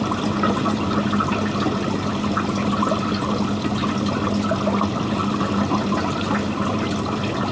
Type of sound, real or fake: real